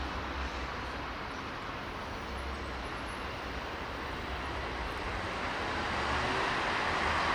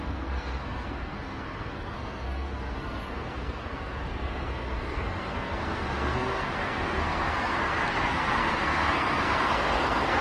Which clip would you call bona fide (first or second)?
first